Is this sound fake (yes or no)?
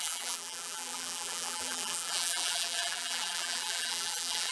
yes